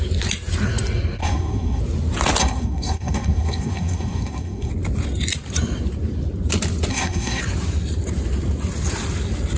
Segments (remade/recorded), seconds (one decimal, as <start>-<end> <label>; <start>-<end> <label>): 0.0-1.2 recorded; 1.2-1.8 remade; 1.8-2.4 recorded; 2.4-4.7 remade; 4.7-6.9 recorded; 6.9-7.4 remade; 7.4-9.6 recorded